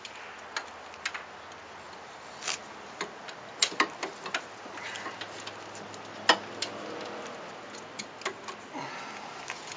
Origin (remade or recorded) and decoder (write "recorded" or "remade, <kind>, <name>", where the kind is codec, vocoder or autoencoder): recorded